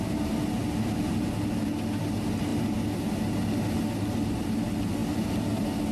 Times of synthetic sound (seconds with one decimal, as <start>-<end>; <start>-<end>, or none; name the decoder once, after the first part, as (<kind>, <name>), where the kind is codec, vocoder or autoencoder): none